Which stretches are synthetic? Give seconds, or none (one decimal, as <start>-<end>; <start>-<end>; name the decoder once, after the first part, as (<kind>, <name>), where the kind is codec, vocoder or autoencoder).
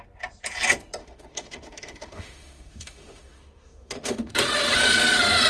1.0-4.3 (autoencoder, DAC-VAE)